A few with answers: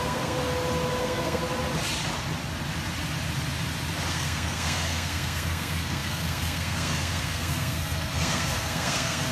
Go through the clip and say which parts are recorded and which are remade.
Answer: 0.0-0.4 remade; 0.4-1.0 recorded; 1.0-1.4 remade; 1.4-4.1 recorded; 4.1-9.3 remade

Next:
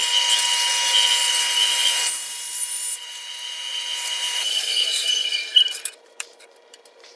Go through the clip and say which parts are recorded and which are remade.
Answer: 0.0-1.8 recorded; 1.8-7.2 remade

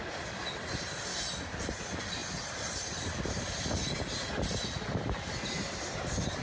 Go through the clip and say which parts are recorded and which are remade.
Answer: 0.0-6.4 recorded

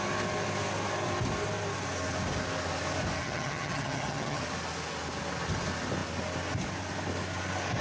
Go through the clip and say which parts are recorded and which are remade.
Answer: 0.0-3.2 recorded; 3.2-4.4 remade; 4.4-7.8 recorded

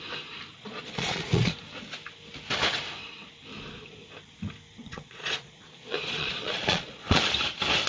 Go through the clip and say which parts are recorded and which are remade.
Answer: 0.0-0.5 recorded; 0.5-1.5 remade; 1.5-4.8 recorded; 4.8-7.2 remade; 7.2-7.9 recorded

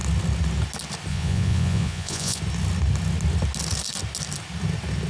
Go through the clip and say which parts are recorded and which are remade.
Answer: 0.0-1.1 recorded; 1.1-2.4 remade; 2.4-5.1 recorded

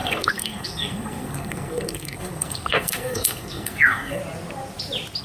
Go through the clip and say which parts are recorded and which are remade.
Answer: 0.0-4.2 remade; 4.2-5.2 recorded

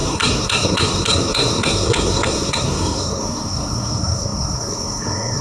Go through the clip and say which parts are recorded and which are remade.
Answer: 0.0-5.4 remade